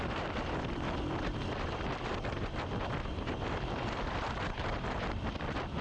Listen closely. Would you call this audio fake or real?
fake